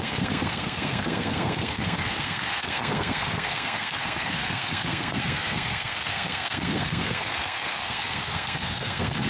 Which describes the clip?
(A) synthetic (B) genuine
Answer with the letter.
A